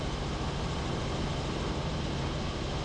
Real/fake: real